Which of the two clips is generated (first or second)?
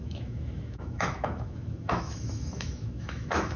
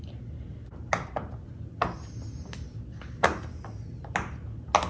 first